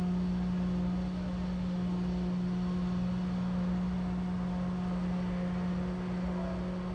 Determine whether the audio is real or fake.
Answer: real